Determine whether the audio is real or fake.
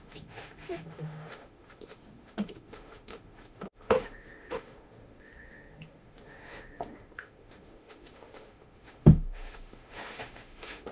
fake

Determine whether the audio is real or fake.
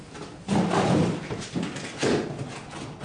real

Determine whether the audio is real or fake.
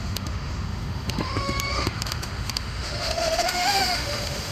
fake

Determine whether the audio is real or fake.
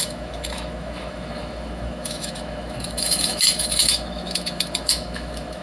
fake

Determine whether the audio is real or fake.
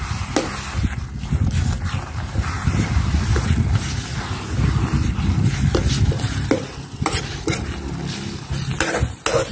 real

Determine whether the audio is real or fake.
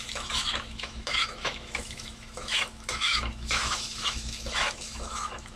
fake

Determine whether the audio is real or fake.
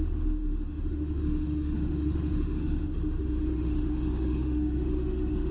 fake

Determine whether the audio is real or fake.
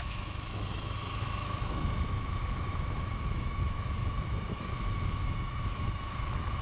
fake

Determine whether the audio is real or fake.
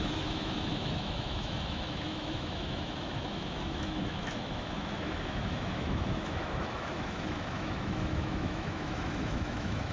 fake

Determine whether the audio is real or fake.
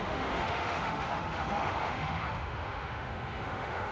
fake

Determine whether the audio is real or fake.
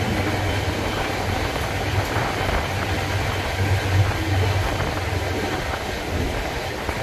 real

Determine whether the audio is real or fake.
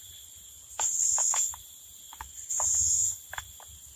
real